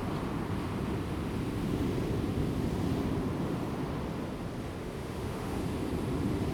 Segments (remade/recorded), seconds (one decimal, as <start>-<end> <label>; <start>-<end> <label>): 0.0-4.8 recorded; 4.8-5.6 remade; 5.6-6.5 recorded